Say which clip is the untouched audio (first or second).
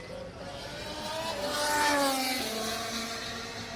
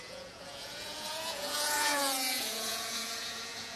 first